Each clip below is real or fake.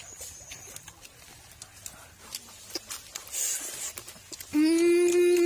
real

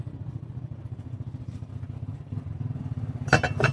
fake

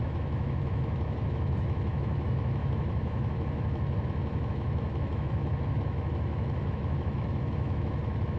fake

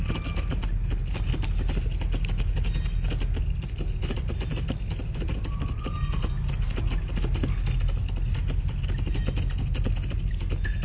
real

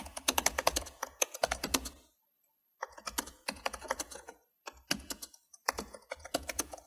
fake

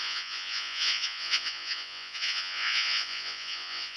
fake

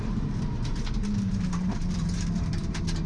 fake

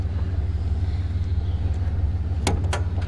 real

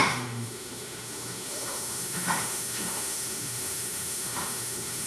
fake